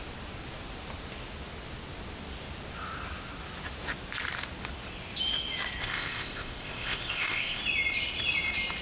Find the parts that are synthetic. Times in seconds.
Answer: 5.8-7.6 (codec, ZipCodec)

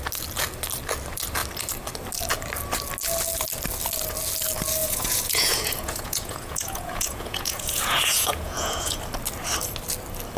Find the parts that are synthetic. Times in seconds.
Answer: 4.8-9.0 (vocoder, Vocos)

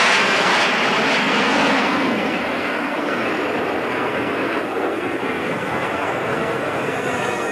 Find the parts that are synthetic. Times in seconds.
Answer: 0.0-0.5 (codec, SNAC); 1.2-3.3; 3.9-7.5

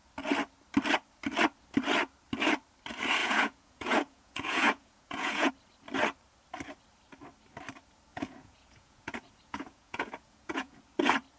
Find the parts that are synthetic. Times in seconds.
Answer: 3.2-5.5 (vocoder, Vocos); 8.1-10.8